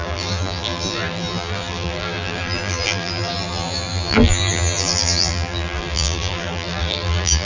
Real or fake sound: fake